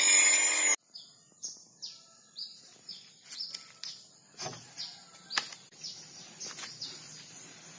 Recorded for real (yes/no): yes